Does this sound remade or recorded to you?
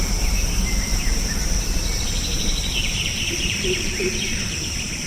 remade